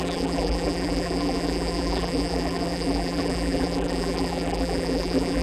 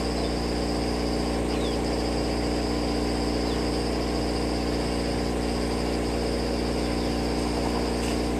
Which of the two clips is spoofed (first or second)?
first